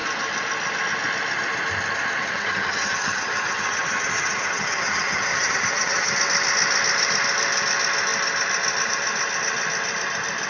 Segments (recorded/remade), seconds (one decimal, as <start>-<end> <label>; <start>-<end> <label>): 0.0-2.2 recorded; 2.2-6.1 remade; 6.1-10.5 recorded